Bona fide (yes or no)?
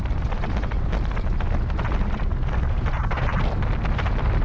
yes